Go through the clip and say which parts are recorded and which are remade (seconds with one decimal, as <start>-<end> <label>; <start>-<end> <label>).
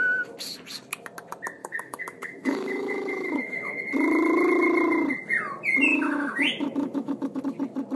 0.0-1.6 recorded; 1.6-3.8 remade; 3.8-5.9 recorded; 5.9-7.4 remade; 7.4-8.0 recorded